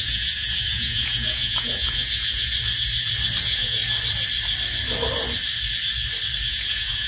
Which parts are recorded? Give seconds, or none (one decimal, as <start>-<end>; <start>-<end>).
2.5-3.4; 3.8-6.5